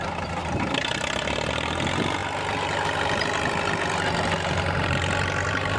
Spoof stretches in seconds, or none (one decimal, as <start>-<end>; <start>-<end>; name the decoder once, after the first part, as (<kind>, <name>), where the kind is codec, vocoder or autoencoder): none